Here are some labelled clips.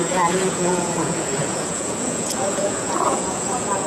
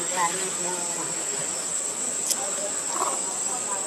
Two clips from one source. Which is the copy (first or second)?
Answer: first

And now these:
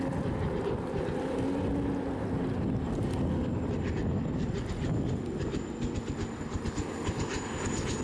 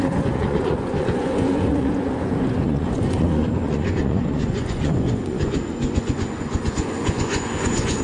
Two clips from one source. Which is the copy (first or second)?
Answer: second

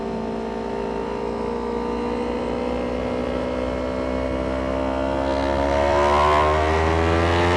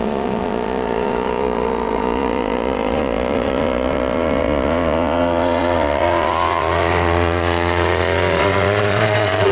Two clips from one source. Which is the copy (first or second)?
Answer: second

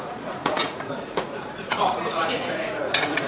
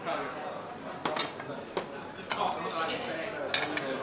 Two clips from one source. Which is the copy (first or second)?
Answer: first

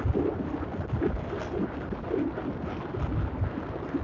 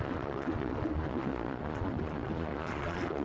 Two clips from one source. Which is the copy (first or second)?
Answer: second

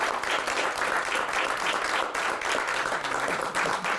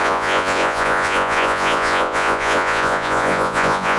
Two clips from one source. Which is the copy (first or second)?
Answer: second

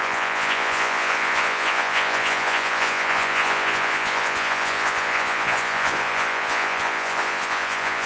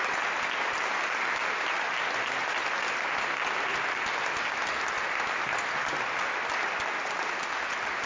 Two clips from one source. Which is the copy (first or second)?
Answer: first